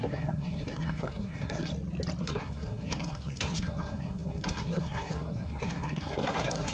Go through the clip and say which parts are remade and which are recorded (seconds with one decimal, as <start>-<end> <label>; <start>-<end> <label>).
0.0-1.7 remade; 1.7-2.2 recorded; 2.2-6.7 remade